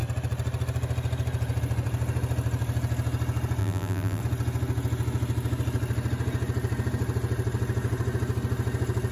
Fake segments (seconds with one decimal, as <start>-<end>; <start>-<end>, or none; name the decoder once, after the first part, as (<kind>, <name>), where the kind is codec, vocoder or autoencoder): 3.6-4.2 (vocoder, BigVGAN v2)